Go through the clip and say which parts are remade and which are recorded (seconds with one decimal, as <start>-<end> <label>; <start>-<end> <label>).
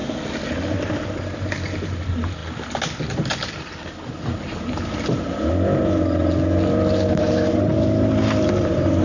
0.0-1.2 recorded; 1.2-2.4 remade; 2.4-7.2 recorded; 7.2-9.0 remade